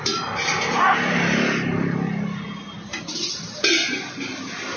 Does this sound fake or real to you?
real